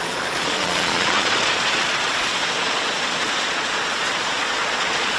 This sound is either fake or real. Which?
fake